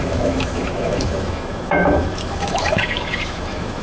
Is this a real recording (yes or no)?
no